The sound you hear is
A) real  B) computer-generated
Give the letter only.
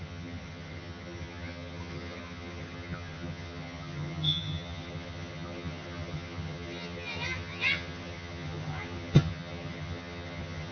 B